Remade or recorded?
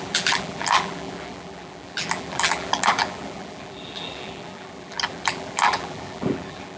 remade